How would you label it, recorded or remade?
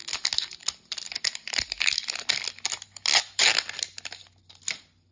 recorded